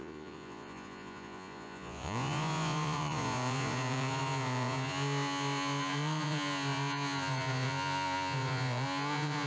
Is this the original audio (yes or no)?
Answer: no